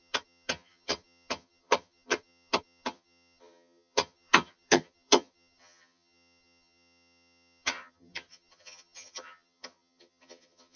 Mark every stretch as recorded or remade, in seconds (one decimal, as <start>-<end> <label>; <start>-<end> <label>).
0.0-10.8 remade